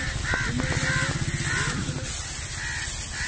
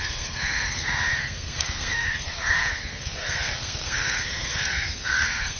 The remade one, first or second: second